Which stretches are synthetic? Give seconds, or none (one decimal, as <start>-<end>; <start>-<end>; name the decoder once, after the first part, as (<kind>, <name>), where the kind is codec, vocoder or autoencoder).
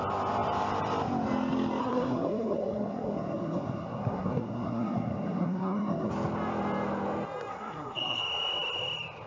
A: 1.8-6.1 (codec, SNAC); 7.5-8.2